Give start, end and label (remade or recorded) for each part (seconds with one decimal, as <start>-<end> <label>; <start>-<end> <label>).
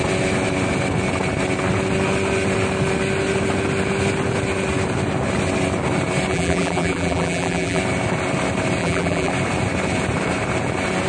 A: 0.0-6.3 recorded; 6.3-7.8 remade; 7.8-8.8 recorded; 8.8-9.3 remade; 9.3-11.1 recorded